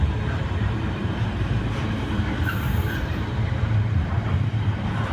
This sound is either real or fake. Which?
fake